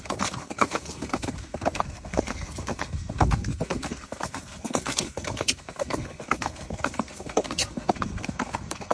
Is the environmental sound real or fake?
fake